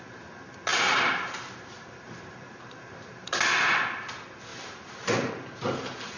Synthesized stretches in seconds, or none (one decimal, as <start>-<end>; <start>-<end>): 0.7-3.4; 4.5-5.3

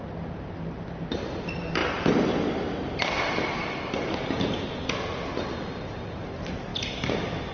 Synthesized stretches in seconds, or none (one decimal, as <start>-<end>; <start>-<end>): none